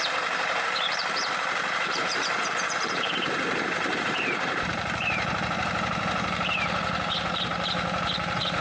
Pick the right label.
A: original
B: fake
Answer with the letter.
B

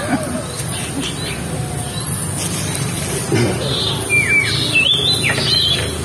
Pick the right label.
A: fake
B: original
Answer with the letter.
B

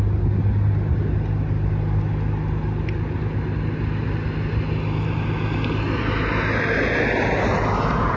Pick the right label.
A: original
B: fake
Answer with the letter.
A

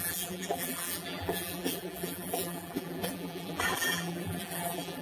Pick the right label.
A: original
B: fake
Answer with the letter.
B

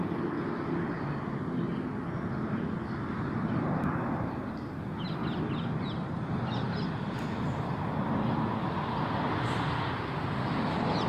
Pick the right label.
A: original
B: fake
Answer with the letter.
A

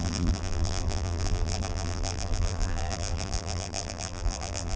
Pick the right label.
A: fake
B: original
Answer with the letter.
A